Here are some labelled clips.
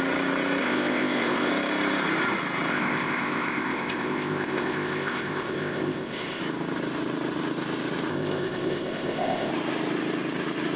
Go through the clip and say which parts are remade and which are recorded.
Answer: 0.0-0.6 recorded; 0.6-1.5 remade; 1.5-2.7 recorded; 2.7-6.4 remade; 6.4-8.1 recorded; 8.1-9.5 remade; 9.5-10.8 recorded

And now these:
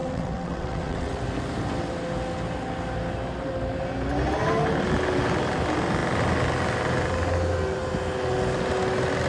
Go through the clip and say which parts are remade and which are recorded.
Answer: 0.0-1.2 remade; 1.2-9.3 recorded

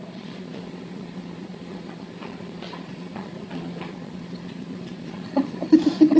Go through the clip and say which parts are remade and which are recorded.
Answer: 0.0-6.2 remade

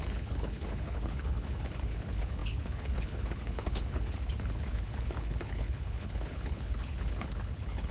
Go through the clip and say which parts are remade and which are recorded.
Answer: 0.0-7.9 remade

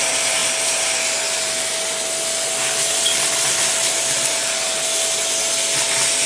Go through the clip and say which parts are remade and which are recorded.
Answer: 0.0-6.3 recorded

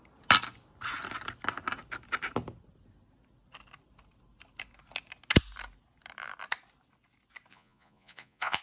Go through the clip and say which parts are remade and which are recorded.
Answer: 0.0-7.5 recorded; 7.5-8.6 remade